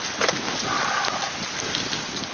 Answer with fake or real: real